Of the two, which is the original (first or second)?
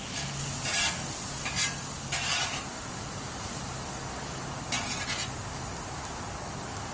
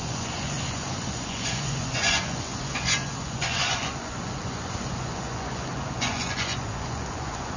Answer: first